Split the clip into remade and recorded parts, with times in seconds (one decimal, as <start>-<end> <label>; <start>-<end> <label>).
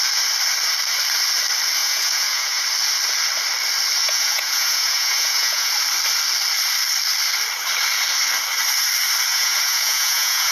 0.0-1.8 recorded; 1.8-2.6 remade; 2.6-4.0 recorded; 4.0-5.7 remade; 5.7-9.3 recorded; 9.3-10.5 remade